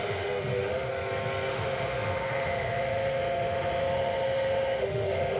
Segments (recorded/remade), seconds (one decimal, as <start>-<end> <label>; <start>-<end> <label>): 0.0-0.9 remade; 0.9-1.5 recorded; 1.5-5.4 remade